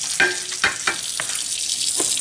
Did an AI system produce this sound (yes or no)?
no